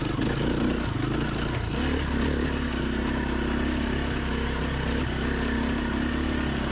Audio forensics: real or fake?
real